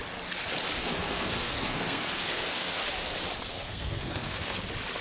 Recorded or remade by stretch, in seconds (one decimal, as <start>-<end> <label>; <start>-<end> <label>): 0.0-0.8 recorded; 0.8-2.8 remade; 2.8-3.4 recorded; 3.4-4.6 remade; 4.6-5.0 recorded